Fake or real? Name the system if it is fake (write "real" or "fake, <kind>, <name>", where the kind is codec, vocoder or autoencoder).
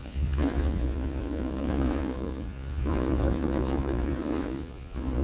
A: fake, vocoder, Vocos